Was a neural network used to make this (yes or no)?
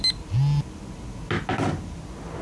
no